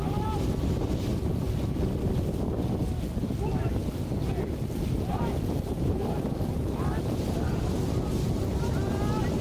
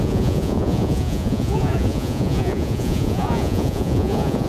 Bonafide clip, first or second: first